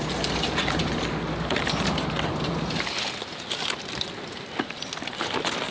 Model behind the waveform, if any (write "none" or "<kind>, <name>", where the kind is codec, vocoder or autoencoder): none